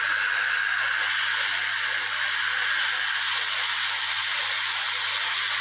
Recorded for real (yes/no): yes